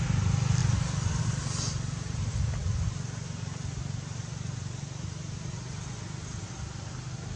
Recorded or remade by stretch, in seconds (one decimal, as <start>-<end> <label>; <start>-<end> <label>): 0.0-7.4 recorded